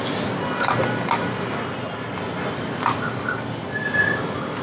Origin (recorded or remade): recorded